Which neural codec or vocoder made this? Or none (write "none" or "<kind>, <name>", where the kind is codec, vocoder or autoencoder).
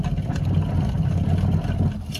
none